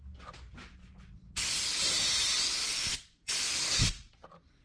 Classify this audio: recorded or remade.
recorded